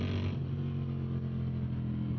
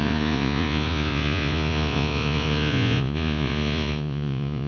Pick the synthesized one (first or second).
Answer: second